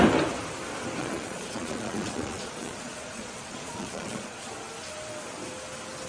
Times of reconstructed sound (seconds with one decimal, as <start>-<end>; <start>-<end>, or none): 1.0-4.5